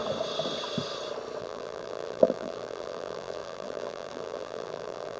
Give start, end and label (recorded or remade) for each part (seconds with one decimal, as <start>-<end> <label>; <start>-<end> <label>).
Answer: 0.0-1.4 recorded; 1.4-5.2 remade